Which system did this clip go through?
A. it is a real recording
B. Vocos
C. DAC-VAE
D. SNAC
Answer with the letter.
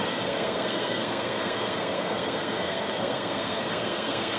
D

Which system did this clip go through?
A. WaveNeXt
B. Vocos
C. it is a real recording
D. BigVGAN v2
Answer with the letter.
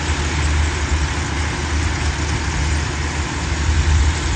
C